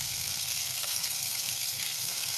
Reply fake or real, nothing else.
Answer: fake